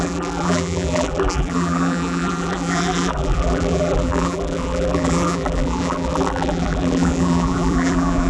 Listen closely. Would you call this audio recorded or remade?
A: remade